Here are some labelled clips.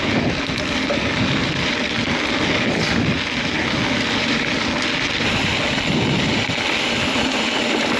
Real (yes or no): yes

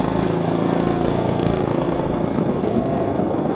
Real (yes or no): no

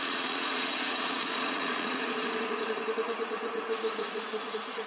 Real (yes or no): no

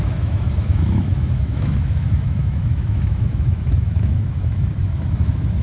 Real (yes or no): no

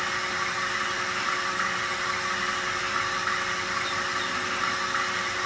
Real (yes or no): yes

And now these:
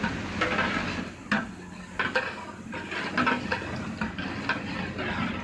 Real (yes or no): yes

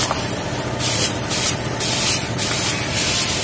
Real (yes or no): no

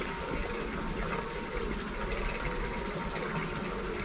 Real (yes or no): yes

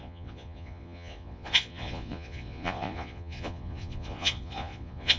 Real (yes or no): no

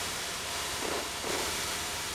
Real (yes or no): no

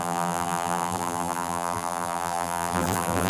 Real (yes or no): no